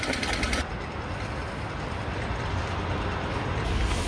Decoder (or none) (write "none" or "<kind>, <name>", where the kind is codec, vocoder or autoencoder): none